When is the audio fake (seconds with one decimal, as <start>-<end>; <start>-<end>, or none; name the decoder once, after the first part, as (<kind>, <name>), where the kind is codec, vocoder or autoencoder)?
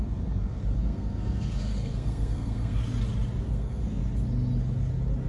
0.0-2.8 (codec, SNAC); 3.4-4.0